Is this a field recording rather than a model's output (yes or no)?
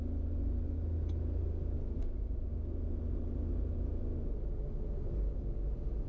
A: yes